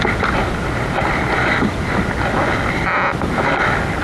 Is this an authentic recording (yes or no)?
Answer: yes